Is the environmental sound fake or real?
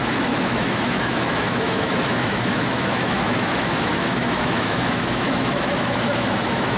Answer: fake